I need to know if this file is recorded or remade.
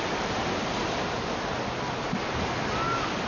recorded